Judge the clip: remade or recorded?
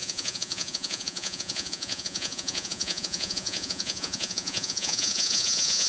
remade